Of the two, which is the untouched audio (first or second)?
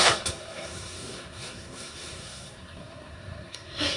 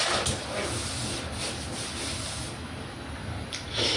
second